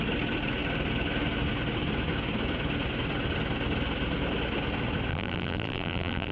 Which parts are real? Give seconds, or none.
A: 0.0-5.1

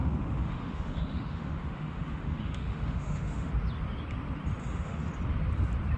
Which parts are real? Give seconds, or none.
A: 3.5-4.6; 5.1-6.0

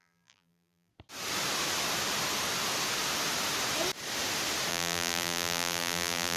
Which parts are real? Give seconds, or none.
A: 0.9-4.7

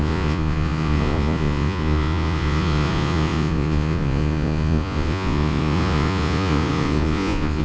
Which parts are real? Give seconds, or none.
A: none